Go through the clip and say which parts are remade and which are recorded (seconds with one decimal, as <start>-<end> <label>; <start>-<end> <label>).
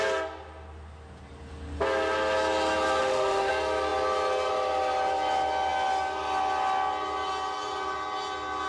0.0-3.0 recorded; 3.0-3.5 remade; 3.5-8.7 recorded